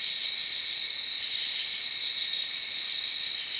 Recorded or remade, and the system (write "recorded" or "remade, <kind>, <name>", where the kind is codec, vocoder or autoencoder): recorded